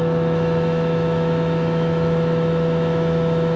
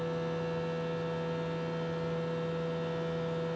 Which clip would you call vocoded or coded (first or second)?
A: first